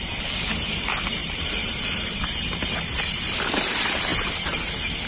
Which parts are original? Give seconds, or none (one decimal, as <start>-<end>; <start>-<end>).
4.1-5.1

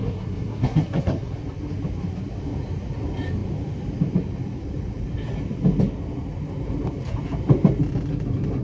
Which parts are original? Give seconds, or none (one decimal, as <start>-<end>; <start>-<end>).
1.3-8.6

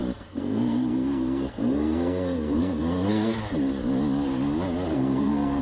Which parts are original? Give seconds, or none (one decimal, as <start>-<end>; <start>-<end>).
3.4-4.9

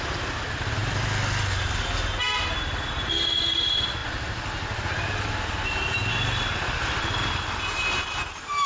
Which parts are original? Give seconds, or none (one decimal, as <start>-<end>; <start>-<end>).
0.0-8.7

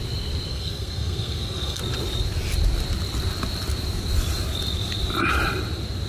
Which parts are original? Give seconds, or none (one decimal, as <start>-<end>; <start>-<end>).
0.0-0.5; 1.8-6.1

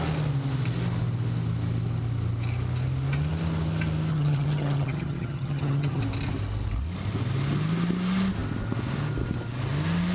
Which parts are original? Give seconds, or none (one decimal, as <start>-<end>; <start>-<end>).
0.0-4.1; 6.0-10.1

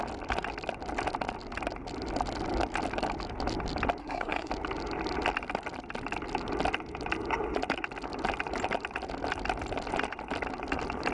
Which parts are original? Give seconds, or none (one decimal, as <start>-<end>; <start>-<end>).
0.0-4.0; 4.5-11.1

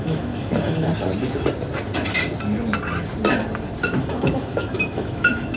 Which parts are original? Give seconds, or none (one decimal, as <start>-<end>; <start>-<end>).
0.9-4.0